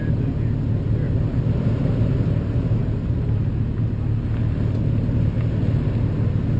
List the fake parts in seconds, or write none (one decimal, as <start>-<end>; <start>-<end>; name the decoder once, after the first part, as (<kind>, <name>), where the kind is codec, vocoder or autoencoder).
2.8-3.5 (vocoder, BigVGAN v2)